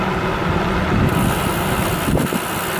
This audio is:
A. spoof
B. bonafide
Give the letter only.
B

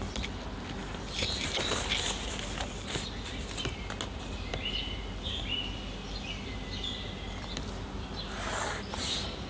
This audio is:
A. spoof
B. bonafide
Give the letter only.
B